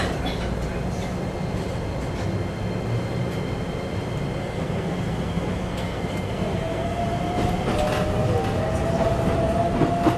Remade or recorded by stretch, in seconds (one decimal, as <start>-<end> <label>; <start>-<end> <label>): 0.0-4.4 recorded; 4.4-7.0 remade; 7.0-10.2 recorded